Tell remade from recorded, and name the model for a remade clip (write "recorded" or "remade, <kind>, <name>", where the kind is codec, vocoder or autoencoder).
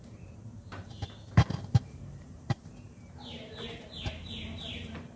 remade, vocoder, BigVGAN v2